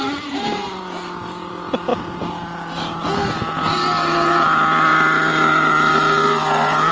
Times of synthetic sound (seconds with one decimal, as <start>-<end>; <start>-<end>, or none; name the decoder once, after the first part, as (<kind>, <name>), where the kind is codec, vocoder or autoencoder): none